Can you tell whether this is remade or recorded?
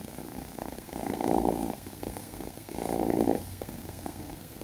remade